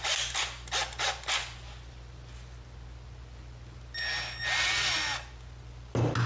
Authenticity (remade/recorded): recorded